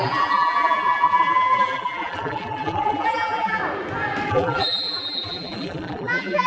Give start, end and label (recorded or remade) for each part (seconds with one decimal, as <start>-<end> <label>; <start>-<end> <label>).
0.0-3.6 remade; 3.6-4.3 recorded; 4.3-6.5 remade